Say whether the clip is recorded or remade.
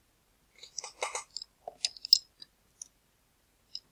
recorded